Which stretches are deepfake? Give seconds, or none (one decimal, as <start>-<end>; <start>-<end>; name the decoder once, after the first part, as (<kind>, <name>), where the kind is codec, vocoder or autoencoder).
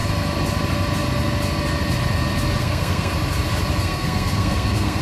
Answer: 2.6-3.1 (codec, SNAC); 3.8-5.0